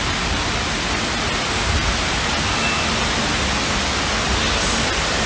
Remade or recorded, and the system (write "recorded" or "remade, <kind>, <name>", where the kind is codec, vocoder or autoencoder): recorded